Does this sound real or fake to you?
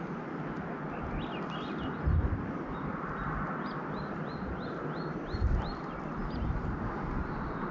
real